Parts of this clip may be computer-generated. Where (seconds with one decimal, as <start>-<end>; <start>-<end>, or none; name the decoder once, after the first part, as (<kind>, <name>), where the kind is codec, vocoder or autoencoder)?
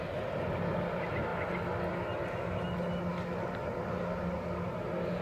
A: 0.0-1.3 (vocoder, BigVGAN v2); 3.9-5.2